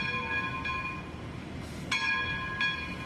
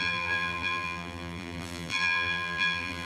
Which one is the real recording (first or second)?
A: first